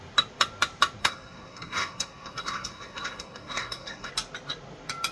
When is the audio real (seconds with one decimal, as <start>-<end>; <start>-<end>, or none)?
0.0-1.0; 4.1-5.1